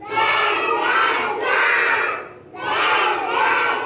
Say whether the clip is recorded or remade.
recorded